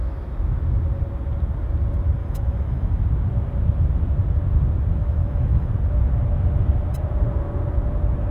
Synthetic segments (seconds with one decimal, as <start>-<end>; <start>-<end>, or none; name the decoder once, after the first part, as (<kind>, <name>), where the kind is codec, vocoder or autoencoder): 2.2-3.0 (autoencoder, DAC-VAE); 5.0-5.7